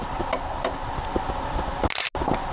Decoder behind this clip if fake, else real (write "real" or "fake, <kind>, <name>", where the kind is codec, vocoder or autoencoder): real